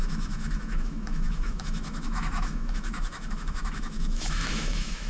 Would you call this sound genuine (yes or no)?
no